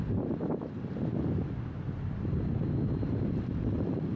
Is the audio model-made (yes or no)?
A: no